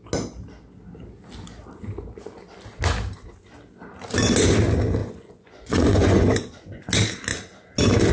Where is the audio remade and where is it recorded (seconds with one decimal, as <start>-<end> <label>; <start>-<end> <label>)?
0.0-5.0 recorded; 5.0-6.8 remade; 6.8-8.1 recorded